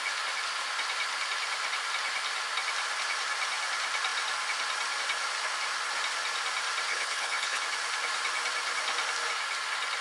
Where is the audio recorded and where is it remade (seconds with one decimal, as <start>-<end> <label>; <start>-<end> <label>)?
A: 0.0-6.9 recorded; 6.9-7.6 remade; 7.6-10.0 recorded